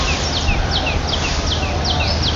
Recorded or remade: recorded